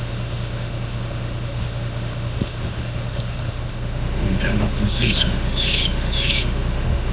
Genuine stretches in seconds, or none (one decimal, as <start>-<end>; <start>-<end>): none